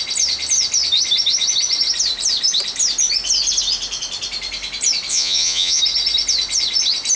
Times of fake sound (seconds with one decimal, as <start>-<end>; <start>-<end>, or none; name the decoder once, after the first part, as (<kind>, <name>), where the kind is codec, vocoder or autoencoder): 5.1-5.8 (vocoder, Vocos)